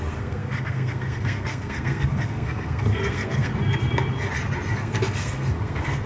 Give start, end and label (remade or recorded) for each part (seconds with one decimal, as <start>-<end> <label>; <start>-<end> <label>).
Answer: 0.0-3.5 remade; 3.5-4.7 recorded; 4.7-6.1 remade